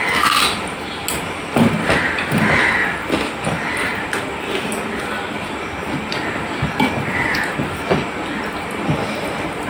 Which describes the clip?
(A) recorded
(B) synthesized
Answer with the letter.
A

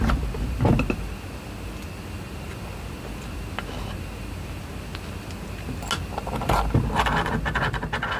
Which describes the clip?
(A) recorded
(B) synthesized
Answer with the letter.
A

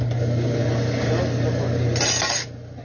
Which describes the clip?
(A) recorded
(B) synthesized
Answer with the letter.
A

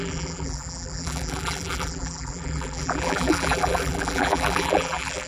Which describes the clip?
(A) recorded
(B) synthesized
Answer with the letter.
B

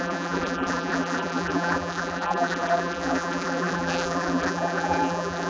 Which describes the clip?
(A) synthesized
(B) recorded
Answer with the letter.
A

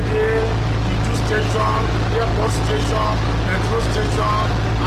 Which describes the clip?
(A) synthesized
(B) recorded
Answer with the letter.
B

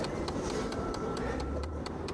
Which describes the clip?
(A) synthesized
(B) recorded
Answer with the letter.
A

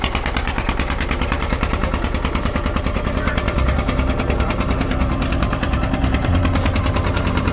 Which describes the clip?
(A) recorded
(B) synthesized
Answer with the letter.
B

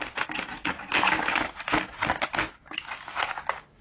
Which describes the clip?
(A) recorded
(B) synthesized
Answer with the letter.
A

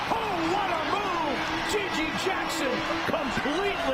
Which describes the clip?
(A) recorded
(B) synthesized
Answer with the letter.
B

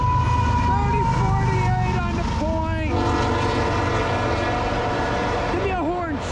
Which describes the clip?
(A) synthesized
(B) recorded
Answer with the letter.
B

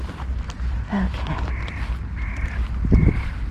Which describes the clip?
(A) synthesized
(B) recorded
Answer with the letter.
B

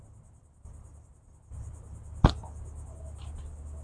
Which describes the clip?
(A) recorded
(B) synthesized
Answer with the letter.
A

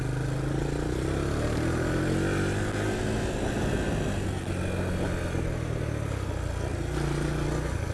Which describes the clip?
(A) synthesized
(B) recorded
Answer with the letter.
B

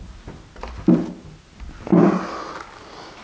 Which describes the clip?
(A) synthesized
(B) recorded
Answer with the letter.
B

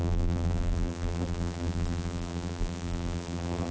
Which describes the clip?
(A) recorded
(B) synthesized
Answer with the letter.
B